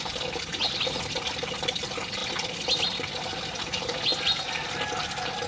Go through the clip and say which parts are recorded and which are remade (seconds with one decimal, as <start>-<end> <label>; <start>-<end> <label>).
0.0-5.5 recorded